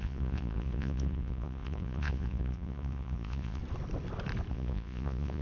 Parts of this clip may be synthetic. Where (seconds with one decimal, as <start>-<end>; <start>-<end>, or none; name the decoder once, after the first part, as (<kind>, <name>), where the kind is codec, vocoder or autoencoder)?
0.0-3.6 (vocoder, Vocos); 4.5-5.4